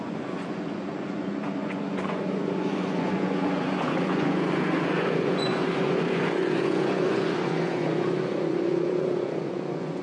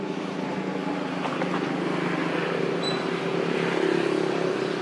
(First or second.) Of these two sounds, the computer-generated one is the first